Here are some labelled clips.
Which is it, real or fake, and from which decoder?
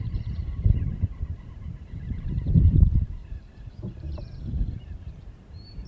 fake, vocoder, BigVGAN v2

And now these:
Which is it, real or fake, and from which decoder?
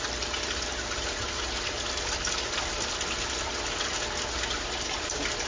real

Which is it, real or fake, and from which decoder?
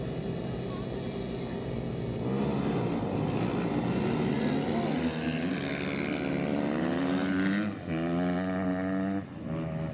real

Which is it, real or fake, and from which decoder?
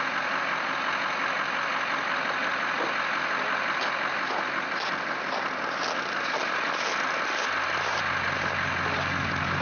real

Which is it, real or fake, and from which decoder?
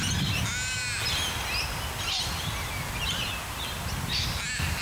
real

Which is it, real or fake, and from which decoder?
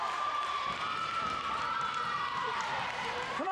fake, vocoder, BigVGAN v2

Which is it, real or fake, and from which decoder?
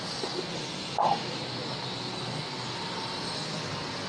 real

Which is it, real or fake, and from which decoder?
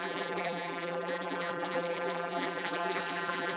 fake, vocoder, BigVGAN v2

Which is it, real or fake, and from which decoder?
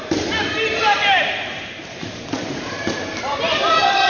fake, vocoder, BigVGAN v2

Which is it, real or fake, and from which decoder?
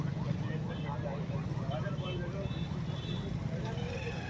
real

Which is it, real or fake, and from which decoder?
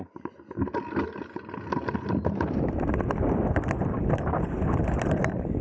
real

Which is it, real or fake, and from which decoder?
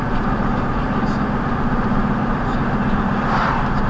fake, vocoder, BigVGAN v2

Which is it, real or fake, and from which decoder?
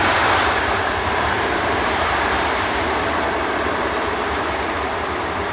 fake, vocoder, BigVGAN v2